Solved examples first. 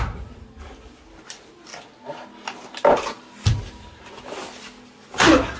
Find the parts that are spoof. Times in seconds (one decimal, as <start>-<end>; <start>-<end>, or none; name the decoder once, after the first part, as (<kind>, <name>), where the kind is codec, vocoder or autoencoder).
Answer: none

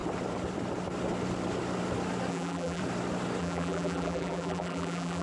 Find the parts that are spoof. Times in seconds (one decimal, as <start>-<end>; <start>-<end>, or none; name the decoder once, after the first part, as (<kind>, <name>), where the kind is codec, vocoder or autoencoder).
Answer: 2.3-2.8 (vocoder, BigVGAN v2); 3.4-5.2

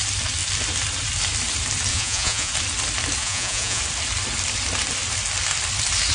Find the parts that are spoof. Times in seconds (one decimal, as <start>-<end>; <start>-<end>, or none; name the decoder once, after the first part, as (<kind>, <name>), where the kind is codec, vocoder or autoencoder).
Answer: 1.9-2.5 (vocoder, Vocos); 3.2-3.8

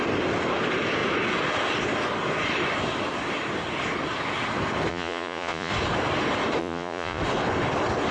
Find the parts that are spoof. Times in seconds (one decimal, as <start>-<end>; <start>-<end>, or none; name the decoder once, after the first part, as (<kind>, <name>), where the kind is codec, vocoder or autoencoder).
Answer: 4.9-5.7 (vocoder, Vocos); 6.6-7.2

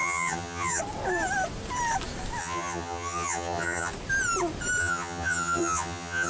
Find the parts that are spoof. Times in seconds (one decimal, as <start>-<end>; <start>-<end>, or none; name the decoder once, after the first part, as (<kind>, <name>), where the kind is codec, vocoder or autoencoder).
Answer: 0.0-0.8 (vocoder, HiFi-GAN); 2.4-3.9; 4.8-6.3

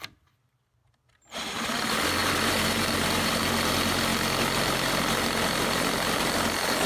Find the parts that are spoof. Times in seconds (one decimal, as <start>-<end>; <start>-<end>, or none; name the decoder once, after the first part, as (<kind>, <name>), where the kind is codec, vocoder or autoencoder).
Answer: 2.2-3.4 (vocoder, BigVGAN v2)

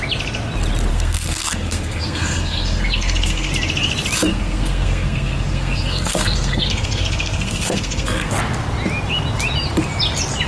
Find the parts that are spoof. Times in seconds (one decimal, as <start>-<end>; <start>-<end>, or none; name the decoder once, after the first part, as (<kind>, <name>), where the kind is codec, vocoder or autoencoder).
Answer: 0.9-3.5 (codec, SNAC); 4.3-8.3

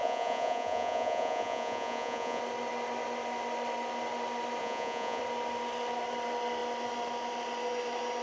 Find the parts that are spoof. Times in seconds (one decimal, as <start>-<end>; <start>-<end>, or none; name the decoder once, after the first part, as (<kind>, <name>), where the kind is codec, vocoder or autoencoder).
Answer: 0.0-2.4 (vocoder, Vocos); 4.6-5.2